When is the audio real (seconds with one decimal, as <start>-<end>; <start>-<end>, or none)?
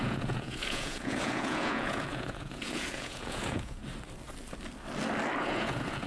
3.8-5.4